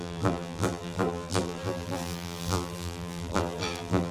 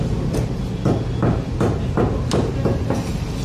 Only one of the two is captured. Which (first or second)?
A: second